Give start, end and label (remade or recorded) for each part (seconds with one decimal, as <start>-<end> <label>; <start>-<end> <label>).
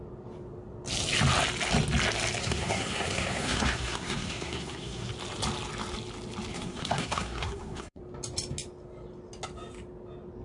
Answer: 0.0-2.4 recorded; 2.4-5.1 remade; 5.1-6.5 recorded; 6.5-8.0 remade; 8.0-10.4 recorded